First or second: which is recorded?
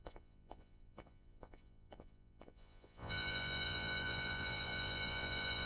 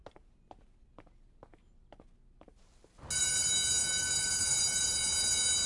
second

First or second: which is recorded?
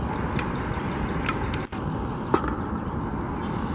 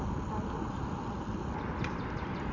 second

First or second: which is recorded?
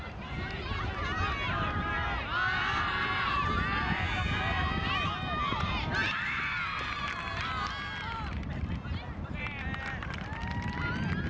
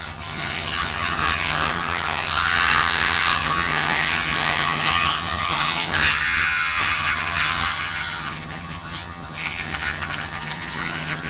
first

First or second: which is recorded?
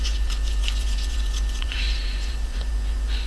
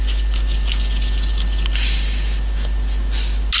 second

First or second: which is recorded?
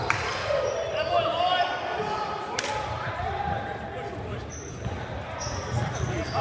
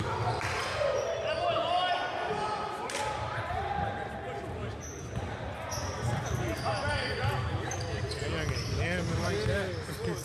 second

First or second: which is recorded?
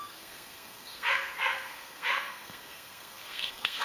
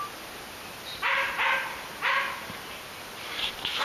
second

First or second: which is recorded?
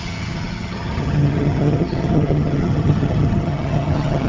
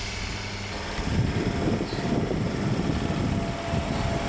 second